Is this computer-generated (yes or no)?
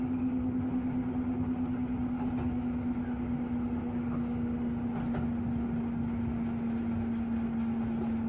no